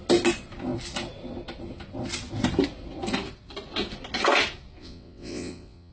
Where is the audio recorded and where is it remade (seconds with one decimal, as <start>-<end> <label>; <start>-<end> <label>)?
0.0-4.8 recorded; 4.8-5.9 remade